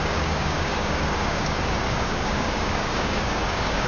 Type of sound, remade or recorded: remade